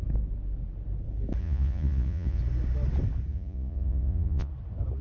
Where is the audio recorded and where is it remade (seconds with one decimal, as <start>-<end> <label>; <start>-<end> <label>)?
0.0-1.4 recorded; 1.4-2.4 remade; 2.4-3.3 recorded; 3.3-4.5 remade; 4.5-5.0 recorded